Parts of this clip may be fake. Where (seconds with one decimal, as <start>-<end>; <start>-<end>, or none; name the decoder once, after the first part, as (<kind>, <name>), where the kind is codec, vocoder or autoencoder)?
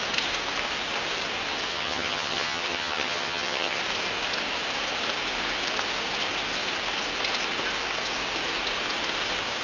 1.7-3.8 (vocoder, HiFi-GAN)